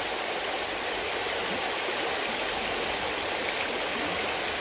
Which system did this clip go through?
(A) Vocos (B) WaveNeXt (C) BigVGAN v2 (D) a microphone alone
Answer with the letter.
D